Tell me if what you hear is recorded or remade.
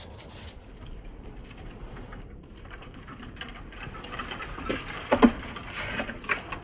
remade